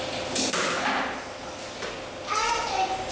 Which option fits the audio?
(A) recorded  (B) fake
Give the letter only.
A